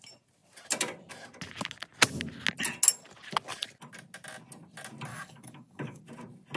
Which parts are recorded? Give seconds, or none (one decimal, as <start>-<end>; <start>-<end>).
0.0-5.1; 6.0-6.6